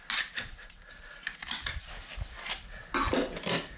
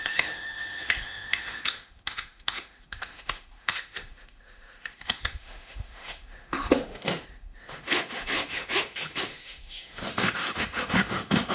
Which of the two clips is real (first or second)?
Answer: first